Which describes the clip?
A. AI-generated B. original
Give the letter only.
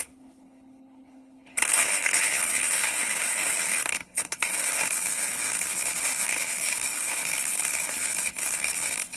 A